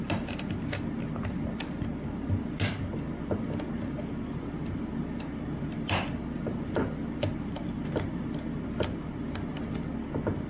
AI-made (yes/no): no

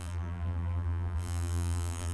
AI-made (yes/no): yes